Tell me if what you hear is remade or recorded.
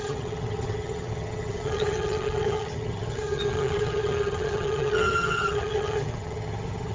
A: remade